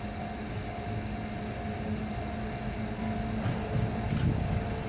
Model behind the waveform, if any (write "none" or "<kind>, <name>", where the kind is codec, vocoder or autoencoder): none